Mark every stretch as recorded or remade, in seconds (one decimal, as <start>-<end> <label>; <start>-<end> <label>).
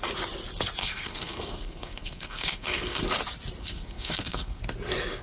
0.0-0.8 recorded; 0.8-3.0 remade; 3.0-3.6 recorded; 3.6-4.6 remade; 4.6-5.2 recorded